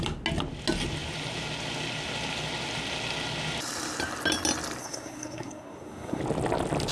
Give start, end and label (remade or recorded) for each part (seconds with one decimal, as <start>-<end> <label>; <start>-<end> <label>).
0.0-4.8 recorded; 4.8-6.2 remade; 6.2-6.9 recorded